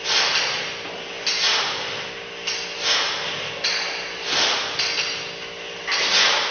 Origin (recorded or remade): recorded